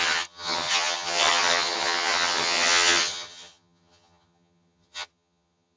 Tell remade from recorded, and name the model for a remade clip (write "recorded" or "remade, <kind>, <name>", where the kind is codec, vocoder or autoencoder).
remade, vocoder, HiFi-GAN